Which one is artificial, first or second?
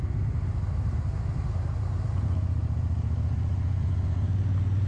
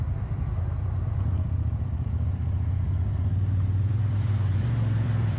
second